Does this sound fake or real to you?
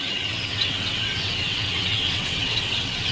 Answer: fake